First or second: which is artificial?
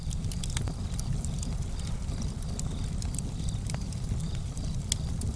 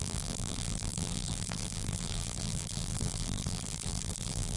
second